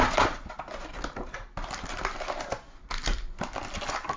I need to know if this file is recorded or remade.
recorded